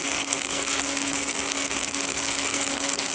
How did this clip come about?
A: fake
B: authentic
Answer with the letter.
A